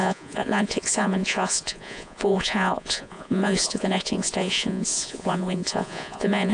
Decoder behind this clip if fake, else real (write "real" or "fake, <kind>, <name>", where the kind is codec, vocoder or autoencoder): fake, vocoder, Vocos